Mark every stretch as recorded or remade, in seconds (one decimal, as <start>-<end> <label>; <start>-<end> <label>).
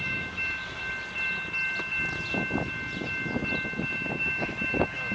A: 0.0-0.8 remade; 0.8-3.9 recorded; 3.9-5.1 remade